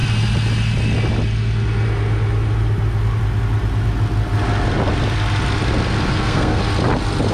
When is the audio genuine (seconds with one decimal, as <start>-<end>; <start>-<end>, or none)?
0.0-6.1; 6.6-7.3